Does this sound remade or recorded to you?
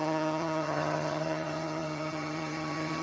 remade